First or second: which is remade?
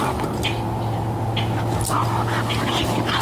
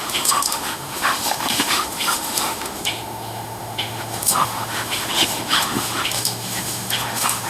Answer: second